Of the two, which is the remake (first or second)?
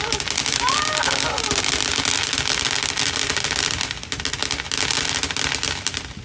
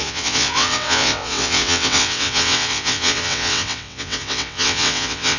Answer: second